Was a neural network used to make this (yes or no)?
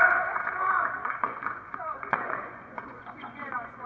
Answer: yes